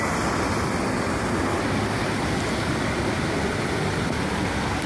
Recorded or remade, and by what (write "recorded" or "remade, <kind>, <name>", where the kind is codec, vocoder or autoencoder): recorded